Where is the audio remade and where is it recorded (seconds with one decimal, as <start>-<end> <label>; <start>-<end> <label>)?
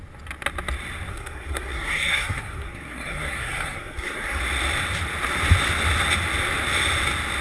0.0-1.1 recorded; 1.1-4.4 remade; 4.4-7.4 recorded